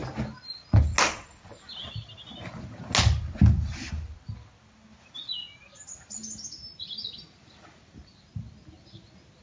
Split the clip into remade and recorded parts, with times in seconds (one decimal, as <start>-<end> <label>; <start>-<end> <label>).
0.0-9.4 recorded